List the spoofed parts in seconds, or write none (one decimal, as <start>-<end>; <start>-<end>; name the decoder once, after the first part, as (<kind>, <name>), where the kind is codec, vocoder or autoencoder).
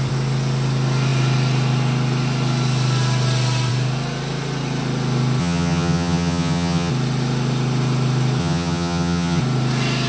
5.4-6.9 (vocoder, HiFi-GAN); 8.4-9.4